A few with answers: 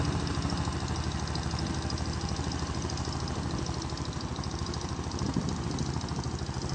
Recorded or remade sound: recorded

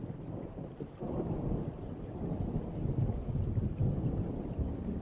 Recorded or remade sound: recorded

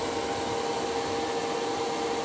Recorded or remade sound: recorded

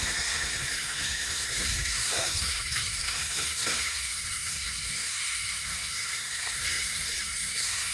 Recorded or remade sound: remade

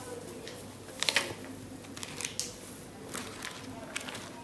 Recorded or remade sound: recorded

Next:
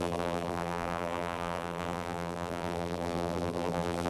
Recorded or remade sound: remade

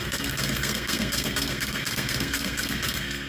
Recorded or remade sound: remade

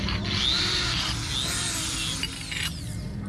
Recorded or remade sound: recorded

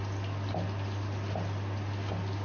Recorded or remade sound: recorded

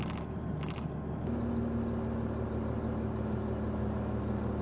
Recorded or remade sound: recorded